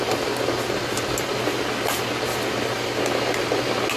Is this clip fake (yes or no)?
no